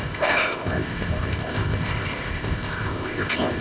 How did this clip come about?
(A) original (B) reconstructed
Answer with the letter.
B